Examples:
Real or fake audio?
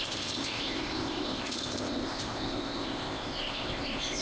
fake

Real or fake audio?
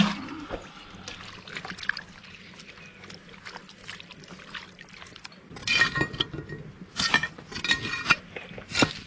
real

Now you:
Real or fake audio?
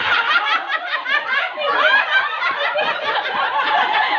fake